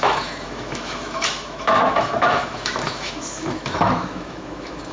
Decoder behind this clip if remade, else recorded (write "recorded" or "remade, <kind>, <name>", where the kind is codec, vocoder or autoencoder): remade, autoencoder, DAC-VAE